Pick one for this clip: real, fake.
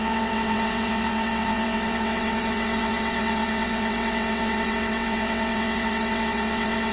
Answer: fake